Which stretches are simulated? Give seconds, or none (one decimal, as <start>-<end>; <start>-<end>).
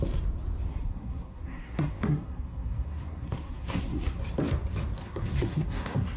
0.7-4.2; 5.0-6.2